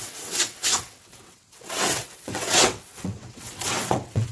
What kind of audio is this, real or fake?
fake